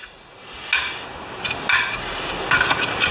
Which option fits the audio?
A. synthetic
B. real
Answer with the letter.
B